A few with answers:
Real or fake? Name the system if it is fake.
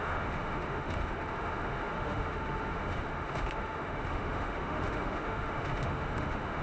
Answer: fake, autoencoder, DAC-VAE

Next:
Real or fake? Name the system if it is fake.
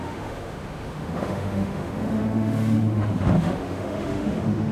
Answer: fake, autoencoder, DAC-VAE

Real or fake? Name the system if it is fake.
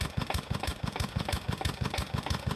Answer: fake, autoencoder, DAC-VAE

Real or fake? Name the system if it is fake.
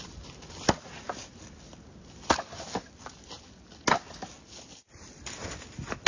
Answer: real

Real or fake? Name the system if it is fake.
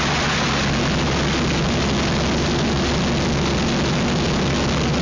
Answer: real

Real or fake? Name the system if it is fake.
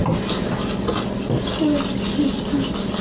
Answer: real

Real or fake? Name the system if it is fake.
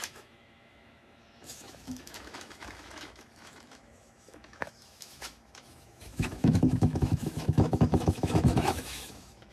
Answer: fake, autoencoder, DAC-VAE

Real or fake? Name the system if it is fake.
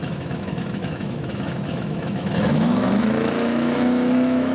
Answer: fake, autoencoder, DAC-VAE